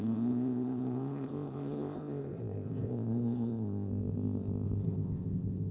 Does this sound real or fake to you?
fake